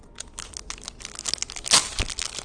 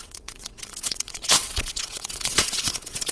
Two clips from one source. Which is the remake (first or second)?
second